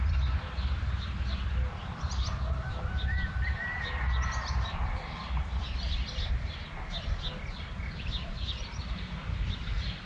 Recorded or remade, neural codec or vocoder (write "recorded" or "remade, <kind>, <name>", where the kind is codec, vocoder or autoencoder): remade, vocoder, BigVGAN v2